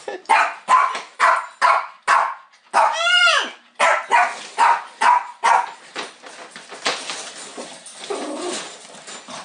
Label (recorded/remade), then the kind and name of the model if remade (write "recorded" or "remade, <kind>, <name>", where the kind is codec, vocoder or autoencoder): recorded